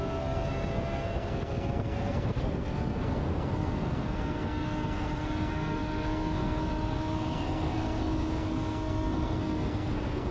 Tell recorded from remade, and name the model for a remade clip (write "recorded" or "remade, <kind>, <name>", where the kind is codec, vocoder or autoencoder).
remade, codec, SNAC